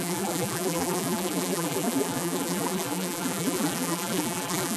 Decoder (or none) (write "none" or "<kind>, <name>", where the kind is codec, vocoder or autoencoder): vocoder, BigVGAN v2